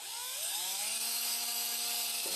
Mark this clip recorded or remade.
remade